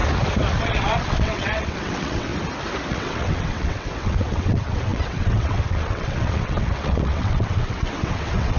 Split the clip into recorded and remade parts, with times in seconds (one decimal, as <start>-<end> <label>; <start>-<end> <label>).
0.0-0.6 recorded; 0.6-2.3 remade; 2.3-2.9 recorded; 2.9-8.6 remade